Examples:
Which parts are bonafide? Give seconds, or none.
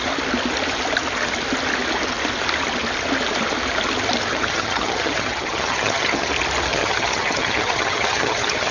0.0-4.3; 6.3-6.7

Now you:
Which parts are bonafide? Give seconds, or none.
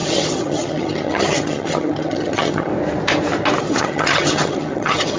2.7-3.6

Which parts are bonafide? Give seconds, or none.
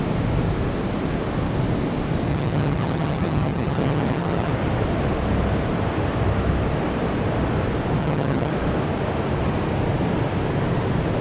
0.0-2.3; 4.5-8.0; 8.5-11.2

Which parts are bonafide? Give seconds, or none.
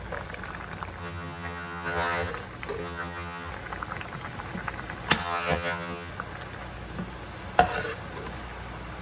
0.0-1.0; 2.3-2.8; 3.5-5.2; 6.1-9.0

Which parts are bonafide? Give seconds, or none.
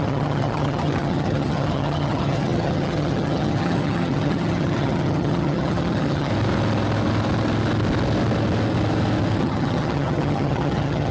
6.3-9.4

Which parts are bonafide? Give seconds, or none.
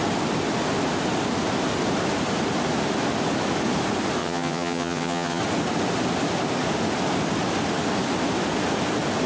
0.0-4.2; 5.4-9.3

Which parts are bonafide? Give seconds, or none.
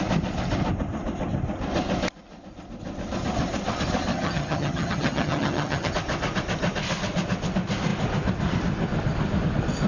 0.0-4.1; 5.9-9.9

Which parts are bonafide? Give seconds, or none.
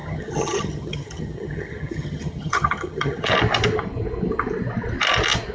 3.3-5.5